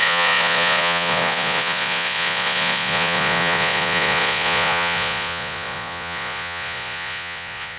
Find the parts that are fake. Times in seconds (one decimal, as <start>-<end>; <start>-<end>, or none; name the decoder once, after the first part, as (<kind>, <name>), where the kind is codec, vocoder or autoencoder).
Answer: 0.0-7.8 (vocoder, Vocos)